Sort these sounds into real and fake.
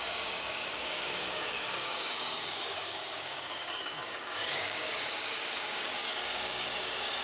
fake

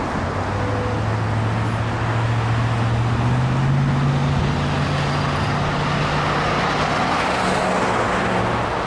real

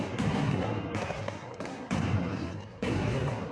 fake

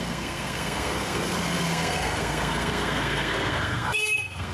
fake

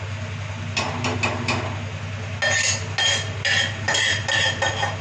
real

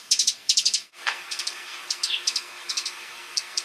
fake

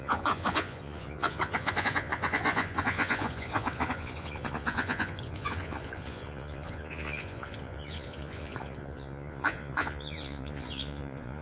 fake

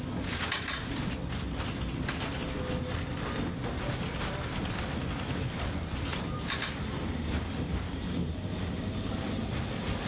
real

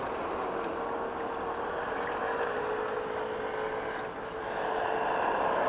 real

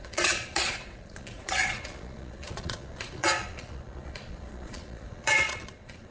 fake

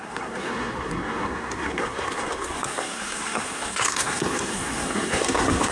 fake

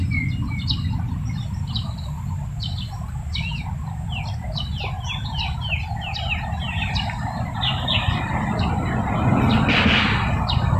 real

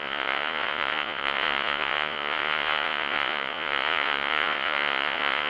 fake